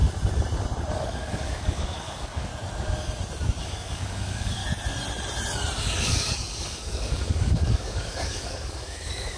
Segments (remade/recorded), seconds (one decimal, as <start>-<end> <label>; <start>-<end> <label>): 0.0-0.9 recorded; 0.9-2.5 remade; 2.5-3.6 recorded; 3.6-4.6 remade; 4.6-5.8 recorded; 5.8-9.4 remade